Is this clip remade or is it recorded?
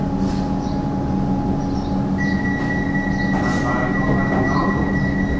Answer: recorded